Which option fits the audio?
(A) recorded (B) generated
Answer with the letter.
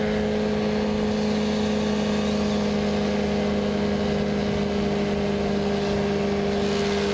A